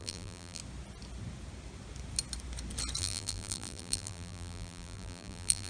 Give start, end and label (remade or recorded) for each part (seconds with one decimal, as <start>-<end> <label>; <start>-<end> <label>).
0.0-0.6 remade; 0.6-3.0 recorded; 3.0-5.7 remade